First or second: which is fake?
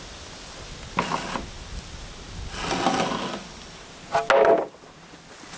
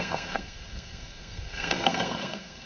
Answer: second